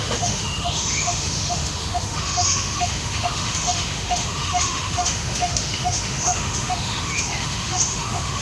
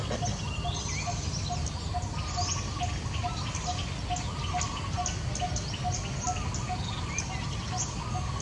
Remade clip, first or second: first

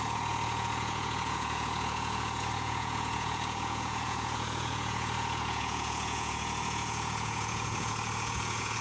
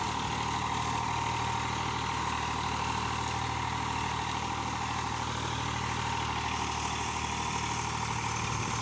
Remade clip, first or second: first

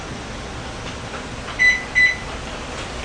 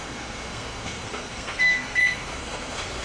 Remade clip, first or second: second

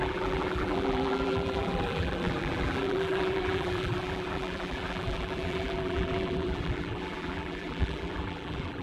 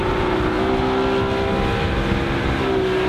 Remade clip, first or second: first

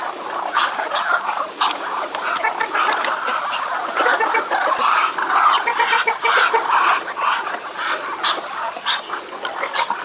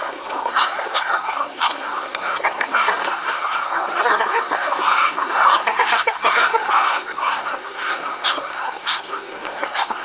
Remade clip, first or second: second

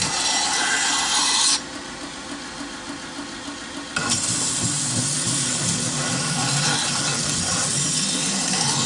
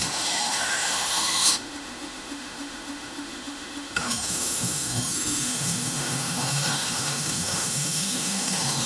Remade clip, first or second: second